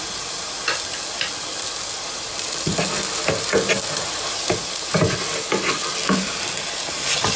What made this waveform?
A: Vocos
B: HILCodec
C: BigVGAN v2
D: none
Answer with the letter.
D